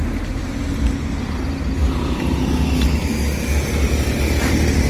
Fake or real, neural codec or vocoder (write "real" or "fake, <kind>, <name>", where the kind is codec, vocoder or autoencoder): real